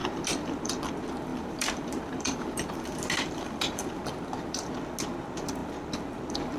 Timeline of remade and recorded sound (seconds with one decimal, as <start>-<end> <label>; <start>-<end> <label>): 0.0-0.7 remade; 0.7-1.3 recorded; 1.3-4.7 remade; 4.7-6.6 recorded

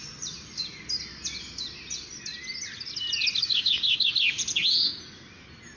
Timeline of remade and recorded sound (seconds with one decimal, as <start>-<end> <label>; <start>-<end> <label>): 0.0-3.4 recorded; 3.4-4.1 remade; 4.1-5.8 recorded

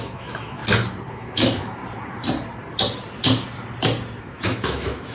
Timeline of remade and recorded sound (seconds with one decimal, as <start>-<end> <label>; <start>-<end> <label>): 0.0-0.6 remade; 0.6-1.1 recorded; 1.1-1.8 remade; 1.8-4.2 recorded; 4.2-5.1 remade

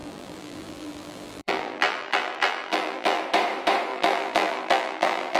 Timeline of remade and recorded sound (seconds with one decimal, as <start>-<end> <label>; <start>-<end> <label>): 0.0-3.2 remade; 3.2-3.9 recorded; 3.9-5.4 remade

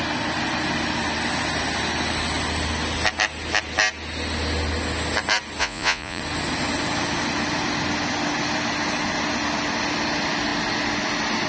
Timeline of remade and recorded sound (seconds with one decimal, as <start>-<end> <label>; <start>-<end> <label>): 0.0-5.6 recorded; 5.6-6.2 remade; 6.2-11.5 recorded